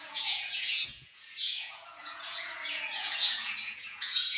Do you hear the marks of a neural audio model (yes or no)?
yes